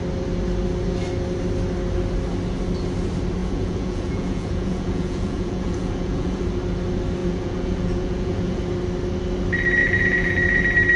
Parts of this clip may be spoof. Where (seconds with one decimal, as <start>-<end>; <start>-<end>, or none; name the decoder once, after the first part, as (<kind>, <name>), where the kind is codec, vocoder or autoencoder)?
3.4-6.4 (vocoder, Vocos); 7.2-8.6; 9.8-10.6